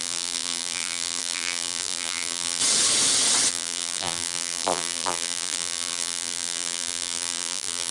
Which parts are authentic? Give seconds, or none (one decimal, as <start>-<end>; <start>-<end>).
2.6-3.5